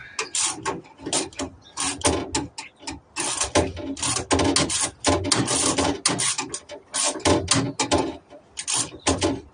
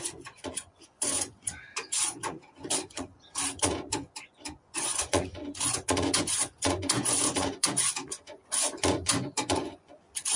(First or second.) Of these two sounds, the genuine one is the first